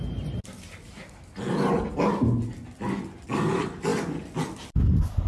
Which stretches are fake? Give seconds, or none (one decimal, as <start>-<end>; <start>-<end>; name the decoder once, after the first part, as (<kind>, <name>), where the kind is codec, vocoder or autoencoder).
none